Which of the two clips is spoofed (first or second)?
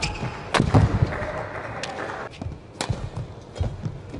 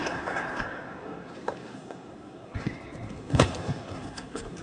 second